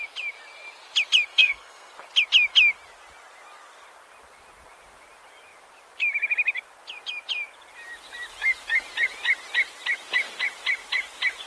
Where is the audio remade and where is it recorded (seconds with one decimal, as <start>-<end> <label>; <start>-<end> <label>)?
0.0-1.3 recorded; 1.3-1.9 remade; 1.9-11.5 recorded